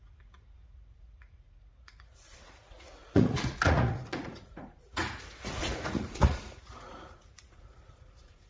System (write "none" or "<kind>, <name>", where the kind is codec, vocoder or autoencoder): vocoder, Vocos